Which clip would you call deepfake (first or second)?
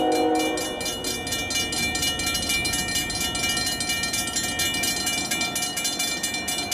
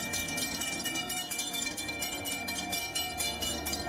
second